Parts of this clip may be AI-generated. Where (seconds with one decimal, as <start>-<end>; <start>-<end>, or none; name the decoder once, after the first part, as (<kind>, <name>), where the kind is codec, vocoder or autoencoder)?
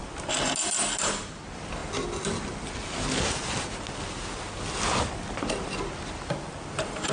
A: none